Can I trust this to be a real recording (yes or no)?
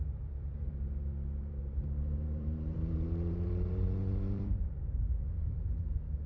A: no